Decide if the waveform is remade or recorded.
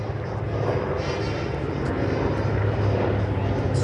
recorded